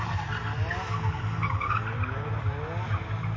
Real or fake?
real